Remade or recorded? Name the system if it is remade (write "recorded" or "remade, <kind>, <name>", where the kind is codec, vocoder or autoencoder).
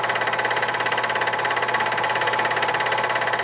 recorded